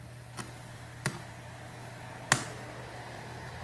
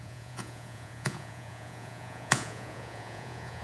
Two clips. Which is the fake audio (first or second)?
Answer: second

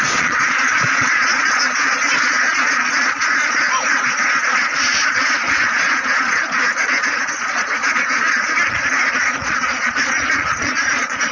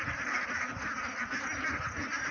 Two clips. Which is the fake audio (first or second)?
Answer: first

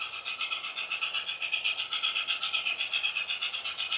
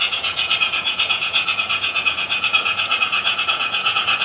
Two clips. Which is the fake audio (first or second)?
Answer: second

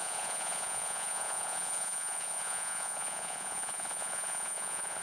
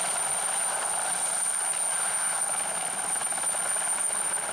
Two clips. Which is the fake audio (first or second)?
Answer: first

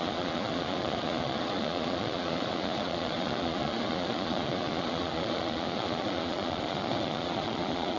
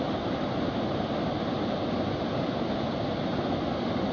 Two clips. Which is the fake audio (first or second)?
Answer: first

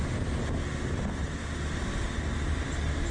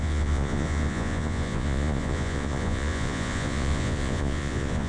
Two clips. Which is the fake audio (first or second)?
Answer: second